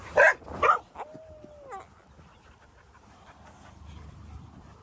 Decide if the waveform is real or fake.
real